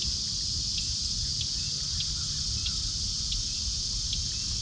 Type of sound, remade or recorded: recorded